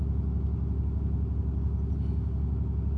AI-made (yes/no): no